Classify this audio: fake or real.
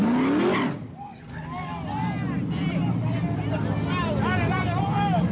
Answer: real